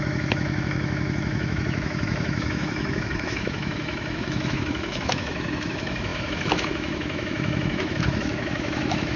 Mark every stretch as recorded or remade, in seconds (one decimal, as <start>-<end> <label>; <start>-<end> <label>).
0.0-9.2 remade